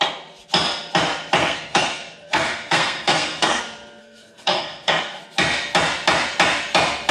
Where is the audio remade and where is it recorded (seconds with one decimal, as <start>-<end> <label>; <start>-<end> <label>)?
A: 0.0-1.4 recorded; 1.4-3.6 remade; 3.6-4.0 recorded; 4.0-5.2 remade; 5.2-7.1 recorded